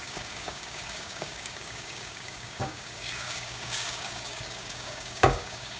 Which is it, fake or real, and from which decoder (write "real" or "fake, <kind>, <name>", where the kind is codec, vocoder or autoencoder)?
fake, codec, DAC